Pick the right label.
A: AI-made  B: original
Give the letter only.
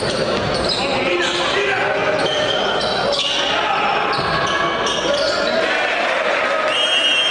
B